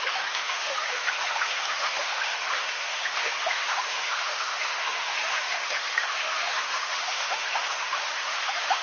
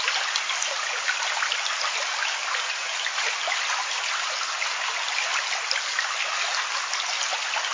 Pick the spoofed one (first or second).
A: first